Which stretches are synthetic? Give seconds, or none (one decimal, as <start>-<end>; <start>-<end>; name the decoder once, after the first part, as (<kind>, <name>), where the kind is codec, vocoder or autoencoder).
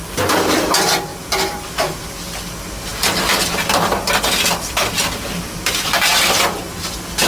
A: none